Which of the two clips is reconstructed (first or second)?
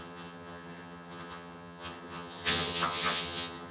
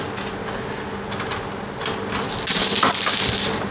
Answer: first